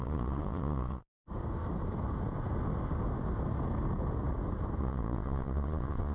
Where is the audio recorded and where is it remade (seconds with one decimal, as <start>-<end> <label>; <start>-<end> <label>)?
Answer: 0.0-1.1 remade; 1.1-4.8 recorded; 4.8-6.1 remade